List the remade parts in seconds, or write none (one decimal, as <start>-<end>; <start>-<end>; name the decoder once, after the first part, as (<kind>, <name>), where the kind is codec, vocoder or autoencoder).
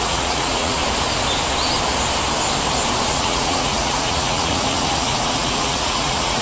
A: 0.0-0.8 (vocoder, Vocos); 3.1-6.4